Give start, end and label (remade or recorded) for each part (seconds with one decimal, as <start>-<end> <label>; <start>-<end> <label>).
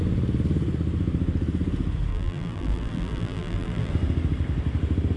0.0-2.1 recorded; 2.1-3.9 remade; 3.9-5.2 recorded